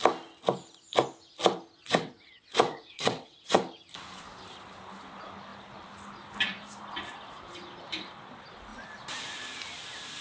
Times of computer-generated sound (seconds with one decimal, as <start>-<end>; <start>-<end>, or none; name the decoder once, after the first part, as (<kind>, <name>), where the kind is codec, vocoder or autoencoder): 1.8-3.6 (vocoder, WaveNeXt)